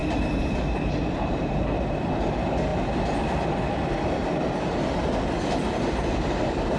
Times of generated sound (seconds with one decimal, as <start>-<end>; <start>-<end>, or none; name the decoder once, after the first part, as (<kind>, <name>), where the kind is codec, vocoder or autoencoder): none